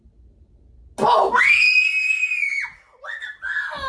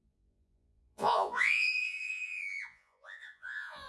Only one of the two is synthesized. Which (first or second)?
second